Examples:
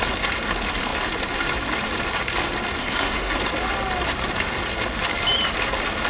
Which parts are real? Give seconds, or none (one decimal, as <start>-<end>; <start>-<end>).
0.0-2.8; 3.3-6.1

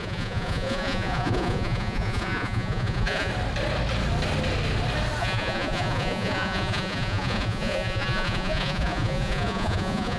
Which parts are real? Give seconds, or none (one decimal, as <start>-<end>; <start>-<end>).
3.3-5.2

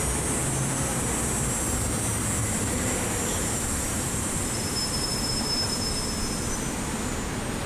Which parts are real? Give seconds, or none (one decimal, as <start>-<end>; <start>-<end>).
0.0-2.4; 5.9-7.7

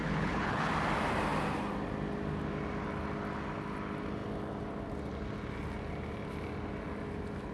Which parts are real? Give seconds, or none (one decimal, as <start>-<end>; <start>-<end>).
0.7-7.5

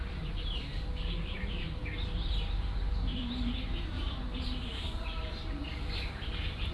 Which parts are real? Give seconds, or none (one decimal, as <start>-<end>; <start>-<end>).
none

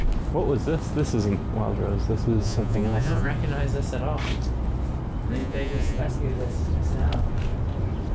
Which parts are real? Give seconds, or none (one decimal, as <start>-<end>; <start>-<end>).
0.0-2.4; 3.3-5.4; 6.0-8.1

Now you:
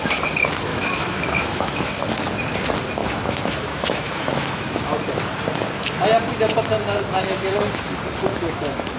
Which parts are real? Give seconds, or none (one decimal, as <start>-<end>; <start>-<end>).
0.0-0.7; 1.9-3.0; 4.8-8.3